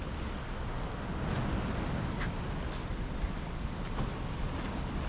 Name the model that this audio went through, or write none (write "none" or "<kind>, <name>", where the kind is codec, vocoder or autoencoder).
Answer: none